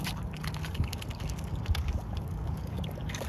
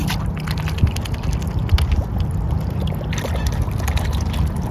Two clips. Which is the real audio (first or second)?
second